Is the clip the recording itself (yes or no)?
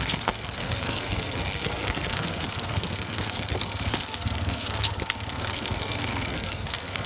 no